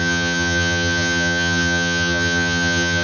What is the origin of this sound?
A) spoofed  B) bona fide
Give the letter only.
A